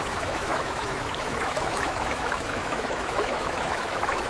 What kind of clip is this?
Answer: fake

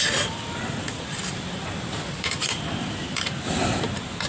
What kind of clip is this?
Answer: fake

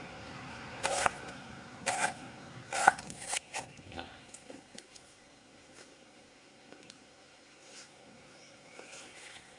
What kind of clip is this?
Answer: fake